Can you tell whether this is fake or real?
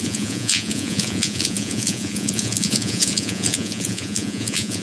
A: fake